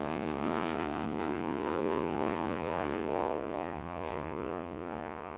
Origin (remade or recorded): remade